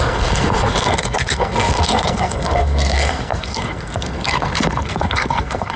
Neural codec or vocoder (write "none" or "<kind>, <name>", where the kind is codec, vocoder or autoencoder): codec, SNAC